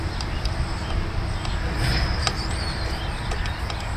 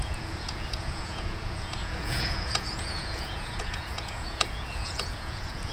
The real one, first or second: first